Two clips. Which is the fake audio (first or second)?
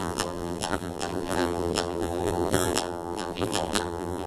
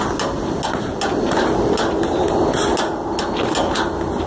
first